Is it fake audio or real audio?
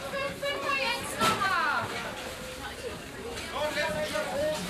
real